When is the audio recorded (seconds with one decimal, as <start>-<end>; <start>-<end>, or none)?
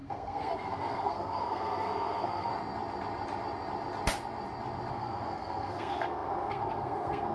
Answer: 2.5-4.9